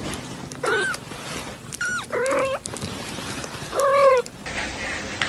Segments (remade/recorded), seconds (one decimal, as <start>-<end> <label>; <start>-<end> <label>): 0.0-5.3 recorded